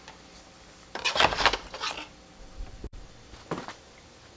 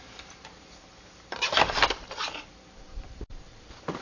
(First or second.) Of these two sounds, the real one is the first